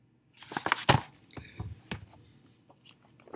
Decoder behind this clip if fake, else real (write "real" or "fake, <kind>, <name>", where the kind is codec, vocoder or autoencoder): real